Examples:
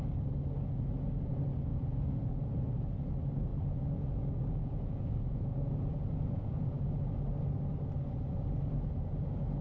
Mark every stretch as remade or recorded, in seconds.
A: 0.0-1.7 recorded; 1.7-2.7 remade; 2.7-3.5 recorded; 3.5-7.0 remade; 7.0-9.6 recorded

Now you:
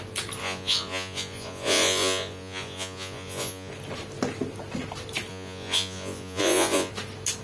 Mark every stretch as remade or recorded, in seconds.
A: 0.0-0.4 recorded; 0.4-3.7 remade; 3.7-5.3 recorded; 5.3-6.9 remade; 6.9-7.4 recorded

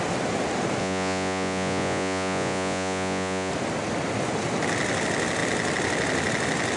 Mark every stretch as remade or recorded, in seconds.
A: 0.0-0.8 recorded; 0.8-3.5 remade; 3.5-6.8 recorded

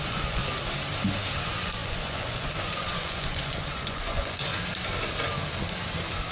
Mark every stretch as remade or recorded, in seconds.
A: 0.0-0.4 remade; 0.4-1.4 recorded; 1.4-4.5 remade; 4.5-6.3 recorded